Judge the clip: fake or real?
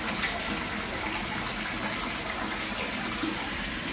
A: real